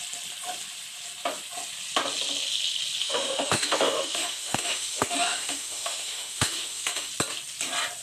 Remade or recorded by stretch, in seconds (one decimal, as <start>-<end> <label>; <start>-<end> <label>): 0.0-3.0 recorded; 3.0-7.1 remade; 7.1-8.0 recorded